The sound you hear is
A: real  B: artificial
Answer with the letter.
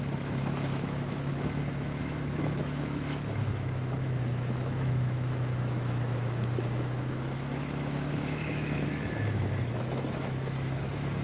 B